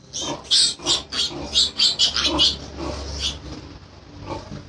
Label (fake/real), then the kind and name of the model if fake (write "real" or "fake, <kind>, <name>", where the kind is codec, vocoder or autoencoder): real